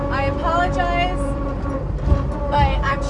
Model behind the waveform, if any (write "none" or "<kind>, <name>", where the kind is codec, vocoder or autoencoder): none